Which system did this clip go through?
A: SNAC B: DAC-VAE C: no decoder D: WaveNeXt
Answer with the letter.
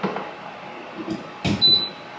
C